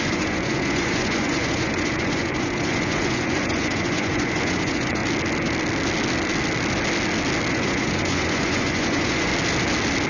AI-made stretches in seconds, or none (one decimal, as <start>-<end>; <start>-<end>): 0.0-5.0; 7.5-9.3